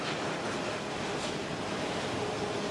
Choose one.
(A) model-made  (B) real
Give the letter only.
B